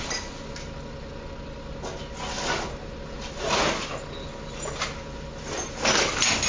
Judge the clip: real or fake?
real